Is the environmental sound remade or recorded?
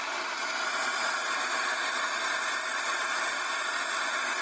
recorded